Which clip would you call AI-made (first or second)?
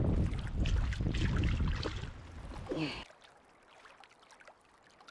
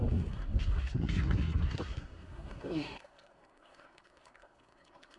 second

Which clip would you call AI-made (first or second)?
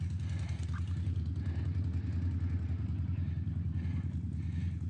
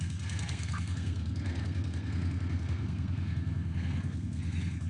second